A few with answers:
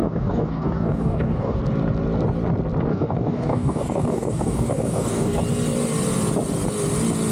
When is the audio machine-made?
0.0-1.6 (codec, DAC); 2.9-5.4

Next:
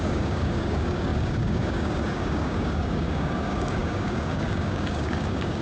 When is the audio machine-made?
0.0-5.6 (codec, DAC)

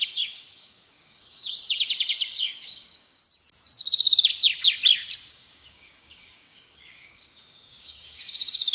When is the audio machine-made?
0.0-3.2 (codec, DAC); 5.3-8.7

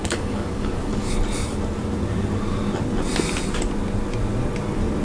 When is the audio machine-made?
0.0-1.1 (codec, DAC)

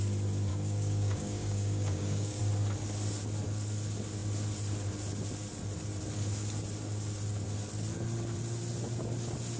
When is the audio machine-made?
0.5-2.4 (codec, DAC)